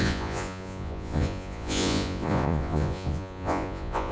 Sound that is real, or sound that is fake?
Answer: fake